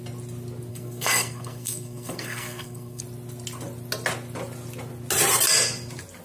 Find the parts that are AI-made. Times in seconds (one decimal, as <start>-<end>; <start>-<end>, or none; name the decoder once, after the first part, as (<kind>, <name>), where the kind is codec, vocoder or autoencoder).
0.7-3.0 (codec, SNAC)